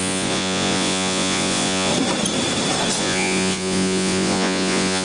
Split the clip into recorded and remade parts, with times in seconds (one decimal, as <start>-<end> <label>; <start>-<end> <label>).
0.0-1.9 remade; 1.9-3.0 recorded; 3.0-5.0 remade

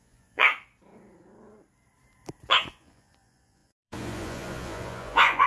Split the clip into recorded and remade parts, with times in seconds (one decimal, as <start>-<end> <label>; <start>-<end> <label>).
0.0-0.5 remade; 0.5-2.5 recorded; 2.5-5.5 remade

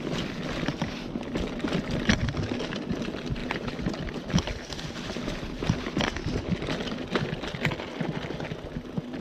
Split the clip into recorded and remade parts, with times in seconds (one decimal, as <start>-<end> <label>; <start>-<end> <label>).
0.0-9.2 recorded